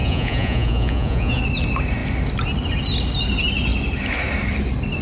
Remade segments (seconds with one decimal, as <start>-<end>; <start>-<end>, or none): 0.0-1.4